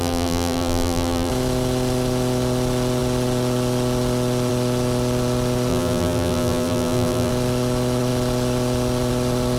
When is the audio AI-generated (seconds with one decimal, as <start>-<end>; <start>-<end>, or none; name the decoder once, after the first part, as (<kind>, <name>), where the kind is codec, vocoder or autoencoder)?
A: 0.0-1.3 (vocoder, BigVGAN v2); 5.7-7.3

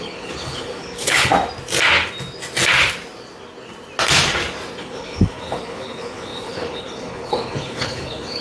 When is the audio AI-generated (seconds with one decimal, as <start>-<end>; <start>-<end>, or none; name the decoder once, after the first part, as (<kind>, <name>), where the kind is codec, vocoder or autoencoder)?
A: 0.0-1.3 (codec, HILCodec); 4.8-8.4

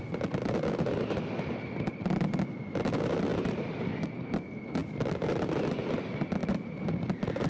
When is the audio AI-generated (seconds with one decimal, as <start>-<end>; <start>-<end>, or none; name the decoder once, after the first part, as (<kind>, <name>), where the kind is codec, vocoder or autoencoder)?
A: 3.3-4.3 (vocoder, BigVGAN v2); 4.8-5.6; 6.4-7.5

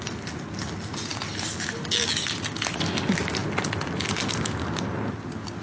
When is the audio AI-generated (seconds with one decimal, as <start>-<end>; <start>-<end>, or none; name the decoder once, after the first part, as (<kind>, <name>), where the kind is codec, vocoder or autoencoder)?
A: none

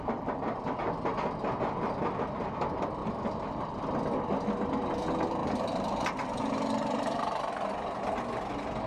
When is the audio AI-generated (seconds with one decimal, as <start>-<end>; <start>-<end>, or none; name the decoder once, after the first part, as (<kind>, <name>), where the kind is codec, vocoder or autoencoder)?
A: 3.0-3.7 (vocoder, BigVGAN v2); 5.4-7.5

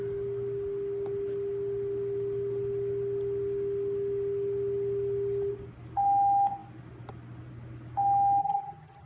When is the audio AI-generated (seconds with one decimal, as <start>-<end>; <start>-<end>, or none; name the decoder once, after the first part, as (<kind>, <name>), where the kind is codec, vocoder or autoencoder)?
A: 8.4-9.1 (vocoder, HiFi-GAN)

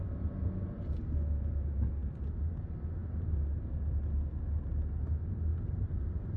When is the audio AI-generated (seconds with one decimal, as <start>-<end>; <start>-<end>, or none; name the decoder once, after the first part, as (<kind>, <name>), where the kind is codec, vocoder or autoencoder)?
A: 2.0-2.6 (vocoder, BigVGAN v2); 5.5-6.4